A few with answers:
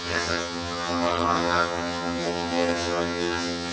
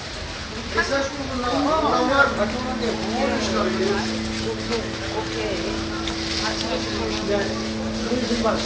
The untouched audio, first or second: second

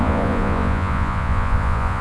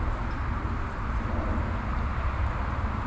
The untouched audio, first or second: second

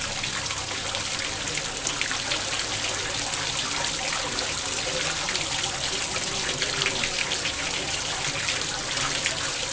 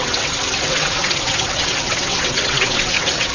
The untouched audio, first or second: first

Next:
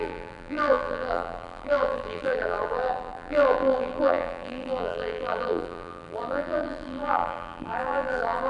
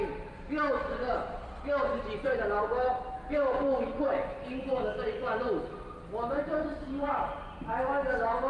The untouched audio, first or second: second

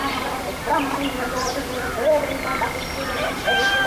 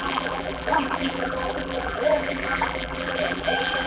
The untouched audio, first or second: first